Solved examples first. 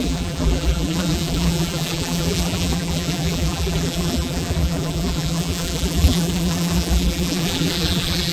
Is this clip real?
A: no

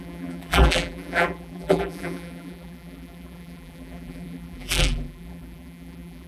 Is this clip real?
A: no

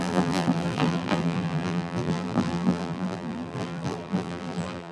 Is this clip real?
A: no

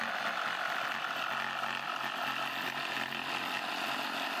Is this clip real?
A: yes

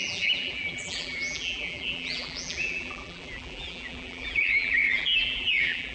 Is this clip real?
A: no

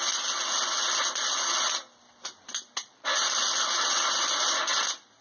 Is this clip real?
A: yes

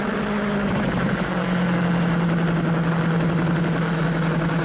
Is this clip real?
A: yes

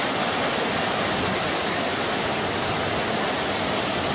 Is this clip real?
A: no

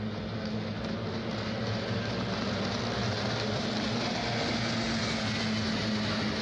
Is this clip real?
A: yes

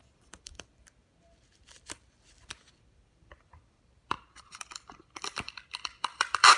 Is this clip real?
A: no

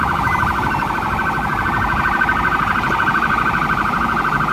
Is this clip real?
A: no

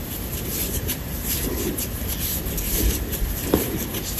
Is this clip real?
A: yes